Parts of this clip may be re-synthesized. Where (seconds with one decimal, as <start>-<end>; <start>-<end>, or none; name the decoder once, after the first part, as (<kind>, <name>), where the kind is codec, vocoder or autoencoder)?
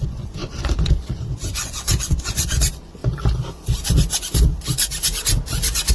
0.0-3.0 (vocoder, Vocos)